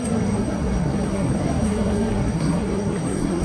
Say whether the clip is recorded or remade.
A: remade